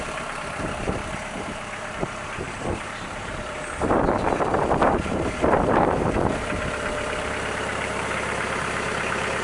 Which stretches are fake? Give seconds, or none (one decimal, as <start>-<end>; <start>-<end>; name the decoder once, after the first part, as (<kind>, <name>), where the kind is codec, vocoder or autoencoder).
0.0-4.0 (vocoder, BigVGAN v2); 4.8-9.4